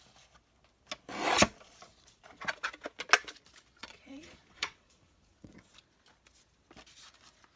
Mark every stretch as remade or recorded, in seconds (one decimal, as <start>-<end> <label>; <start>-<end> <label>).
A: 0.0-3.8 recorded; 3.8-5.7 remade; 5.7-7.6 recorded